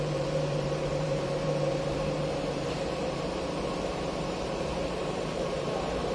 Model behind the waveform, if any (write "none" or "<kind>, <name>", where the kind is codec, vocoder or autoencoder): vocoder, BigVGAN v2